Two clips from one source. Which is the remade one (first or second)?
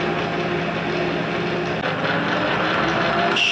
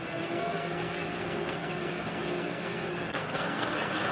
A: second